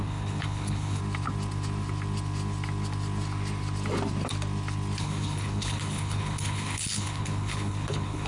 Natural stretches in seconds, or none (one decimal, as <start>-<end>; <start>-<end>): 1.0-5.0